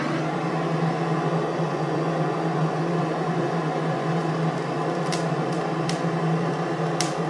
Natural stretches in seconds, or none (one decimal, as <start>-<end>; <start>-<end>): 0.0-1.4; 4.3-7.3